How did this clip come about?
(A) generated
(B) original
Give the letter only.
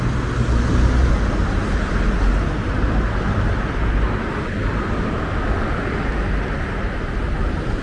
B